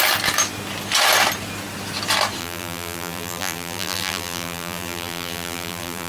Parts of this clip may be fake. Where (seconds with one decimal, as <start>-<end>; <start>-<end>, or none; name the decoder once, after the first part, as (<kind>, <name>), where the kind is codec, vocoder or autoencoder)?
2.4-6.1 (vocoder, BigVGAN v2)